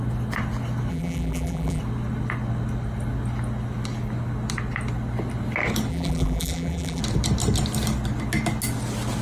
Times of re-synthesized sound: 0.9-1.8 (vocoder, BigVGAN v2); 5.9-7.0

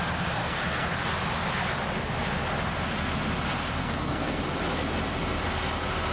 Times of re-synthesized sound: 0.4-0.9 (codec, SNAC); 3.8-4.4

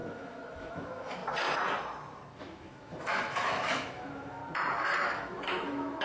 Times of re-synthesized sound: 0.0-1.2 (autoencoder, DAC-VAE); 2.4-4.4; 5.0-6.0